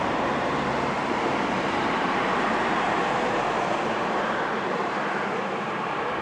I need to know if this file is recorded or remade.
remade